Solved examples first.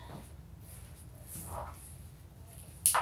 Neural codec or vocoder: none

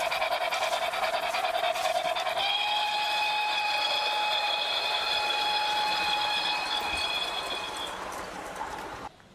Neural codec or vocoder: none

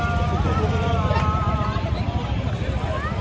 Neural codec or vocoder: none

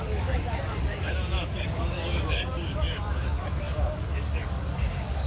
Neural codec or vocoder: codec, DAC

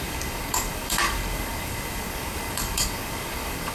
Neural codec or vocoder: codec, DAC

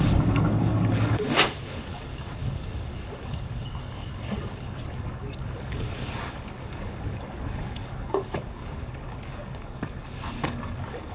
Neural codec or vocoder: codec, DAC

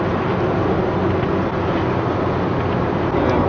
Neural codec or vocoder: none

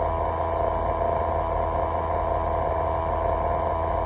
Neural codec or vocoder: none